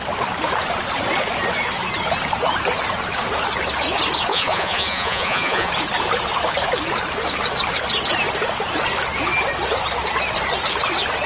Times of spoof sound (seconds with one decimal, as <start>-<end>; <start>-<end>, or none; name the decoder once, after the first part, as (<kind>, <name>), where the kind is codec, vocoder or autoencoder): 4.3-5.7 (vocoder, Vocos)